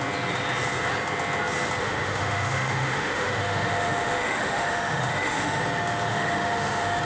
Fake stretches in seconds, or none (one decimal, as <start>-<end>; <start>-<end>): 1.8-5.6; 6.1-7.0